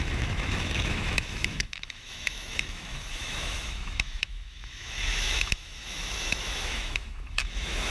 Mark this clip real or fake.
fake